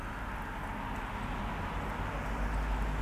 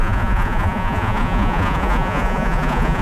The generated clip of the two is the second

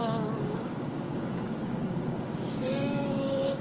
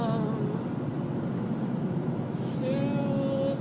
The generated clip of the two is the first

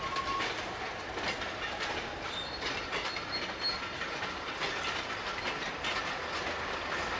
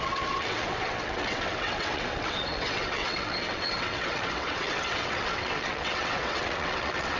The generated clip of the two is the second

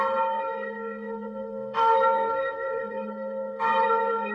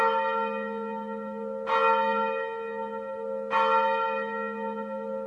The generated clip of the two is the first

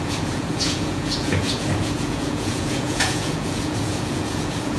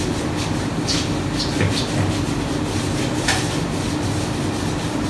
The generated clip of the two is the first